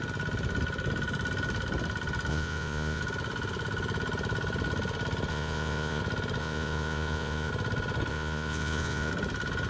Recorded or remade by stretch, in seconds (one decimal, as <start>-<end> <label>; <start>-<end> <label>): 0.0-2.3 recorded; 2.3-3.0 remade; 3.0-5.3 recorded; 5.3-6.0 remade; 6.0-6.4 recorded; 6.4-7.5 remade; 7.5-8.1 recorded; 8.1-9.1 remade; 9.1-9.7 recorded